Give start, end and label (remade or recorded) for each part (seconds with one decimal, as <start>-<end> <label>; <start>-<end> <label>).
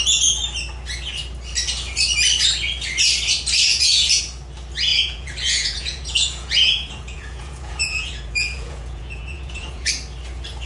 0.0-3.7 recorded; 3.7-4.2 remade; 4.2-4.9 recorded; 4.9-9.9 remade; 9.9-10.7 recorded